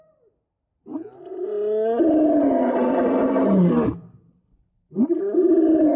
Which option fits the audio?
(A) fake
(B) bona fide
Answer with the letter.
B